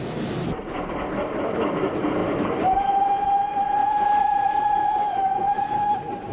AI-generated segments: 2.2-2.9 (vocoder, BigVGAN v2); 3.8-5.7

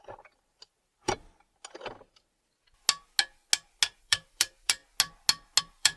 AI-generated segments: 0.0-1.0 (vocoder, BigVGAN v2); 4.0-4.8; 5.6-6.0

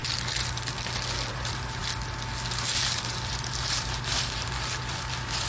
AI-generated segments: 1.3-1.8 (vocoder, BigVGAN v2); 2.7-5.5

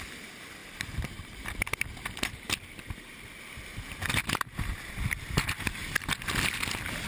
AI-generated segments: 0.6-2.6 (vocoder, BigVGAN v2); 4.2-4.9